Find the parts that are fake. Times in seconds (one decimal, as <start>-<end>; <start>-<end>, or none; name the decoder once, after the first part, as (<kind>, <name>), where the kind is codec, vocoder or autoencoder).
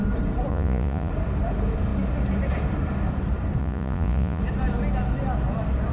0.5-1.1 (vocoder, Vocos); 3.6-4.4